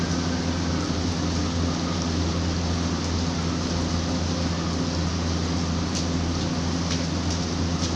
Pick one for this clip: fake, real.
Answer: real